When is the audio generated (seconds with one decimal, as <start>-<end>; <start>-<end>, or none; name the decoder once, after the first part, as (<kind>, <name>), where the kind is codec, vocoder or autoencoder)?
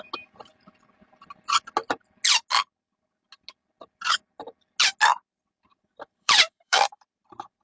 5.7-7.6 (vocoder, BigVGAN v2)